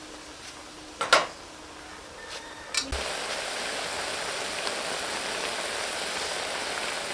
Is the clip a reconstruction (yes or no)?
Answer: no